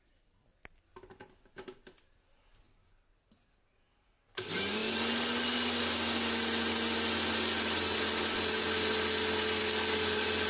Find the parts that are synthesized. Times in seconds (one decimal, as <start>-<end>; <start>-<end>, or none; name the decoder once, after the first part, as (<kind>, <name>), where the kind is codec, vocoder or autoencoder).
none